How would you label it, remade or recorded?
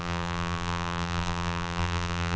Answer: remade